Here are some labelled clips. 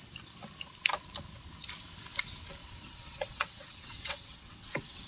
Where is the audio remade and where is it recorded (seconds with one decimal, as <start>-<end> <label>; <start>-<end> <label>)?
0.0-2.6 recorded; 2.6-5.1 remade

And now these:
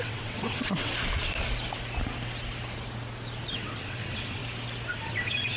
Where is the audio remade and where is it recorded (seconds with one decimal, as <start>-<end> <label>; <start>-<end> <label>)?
0.0-0.9 remade; 0.9-3.5 recorded; 3.5-4.4 remade; 4.4-4.9 recorded; 4.9-5.6 remade

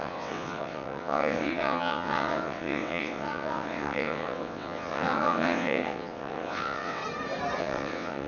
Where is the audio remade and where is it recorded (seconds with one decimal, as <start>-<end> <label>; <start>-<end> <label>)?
0.0-7.0 remade; 7.0-7.6 recorded; 7.6-8.3 remade

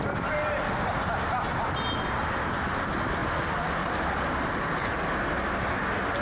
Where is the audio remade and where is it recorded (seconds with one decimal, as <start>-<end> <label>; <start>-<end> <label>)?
0.0-6.2 recorded

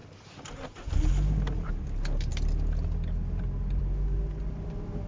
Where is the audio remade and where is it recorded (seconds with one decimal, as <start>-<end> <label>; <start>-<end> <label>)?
0.0-5.1 recorded

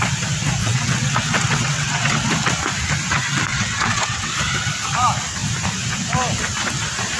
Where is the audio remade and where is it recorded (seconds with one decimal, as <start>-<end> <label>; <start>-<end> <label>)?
0.0-0.6 recorded; 0.6-2.3 remade; 2.3-3.5 recorded; 3.5-4.3 remade; 4.3-7.2 recorded